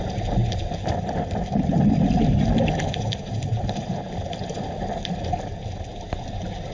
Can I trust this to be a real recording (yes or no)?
yes